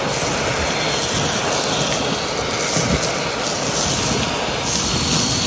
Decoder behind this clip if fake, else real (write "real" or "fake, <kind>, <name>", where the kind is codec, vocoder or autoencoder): real